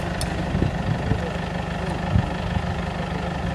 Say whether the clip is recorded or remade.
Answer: recorded